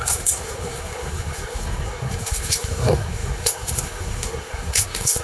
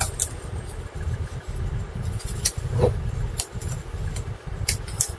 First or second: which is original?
second